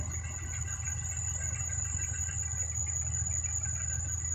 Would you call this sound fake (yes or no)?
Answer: no